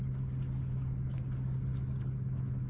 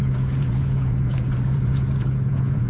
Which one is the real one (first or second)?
first